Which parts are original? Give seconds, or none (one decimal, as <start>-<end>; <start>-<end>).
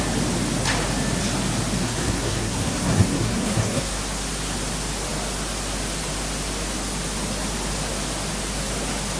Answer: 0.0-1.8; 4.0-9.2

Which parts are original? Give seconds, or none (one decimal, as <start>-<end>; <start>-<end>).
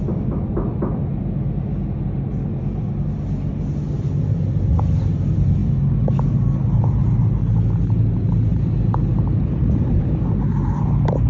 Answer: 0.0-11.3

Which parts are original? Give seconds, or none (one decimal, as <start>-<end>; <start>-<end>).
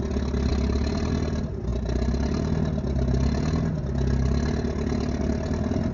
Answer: 0.0-5.9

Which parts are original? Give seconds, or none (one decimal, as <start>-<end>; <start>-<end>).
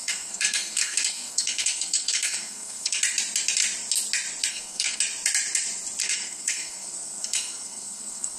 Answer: 3.0-4.5; 5.0-6.0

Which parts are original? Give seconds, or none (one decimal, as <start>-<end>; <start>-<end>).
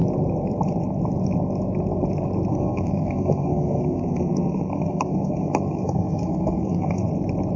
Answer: 0.0-2.5; 7.1-7.6